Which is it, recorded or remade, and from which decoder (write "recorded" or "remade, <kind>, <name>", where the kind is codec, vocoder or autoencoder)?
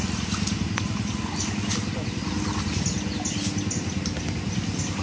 recorded